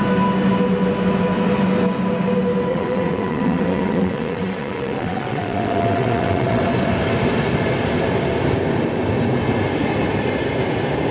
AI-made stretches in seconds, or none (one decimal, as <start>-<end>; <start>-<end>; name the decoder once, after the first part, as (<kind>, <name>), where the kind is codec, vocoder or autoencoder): 2.7-6.6 (vocoder, WaveNeXt)